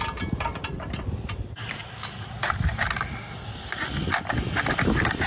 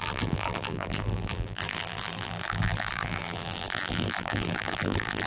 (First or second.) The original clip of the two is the first